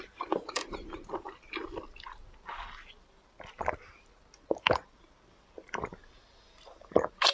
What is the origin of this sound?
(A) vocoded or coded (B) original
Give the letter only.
B